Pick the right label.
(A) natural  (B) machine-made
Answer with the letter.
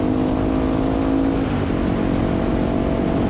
A